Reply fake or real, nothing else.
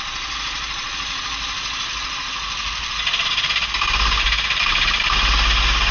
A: real